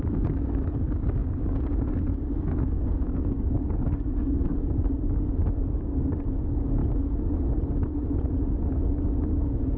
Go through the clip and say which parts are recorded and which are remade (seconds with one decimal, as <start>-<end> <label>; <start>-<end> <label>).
0.0-6.8 remade; 6.8-9.2 recorded; 9.2-9.8 remade